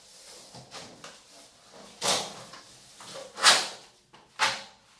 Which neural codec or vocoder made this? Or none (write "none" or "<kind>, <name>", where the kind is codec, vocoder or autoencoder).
none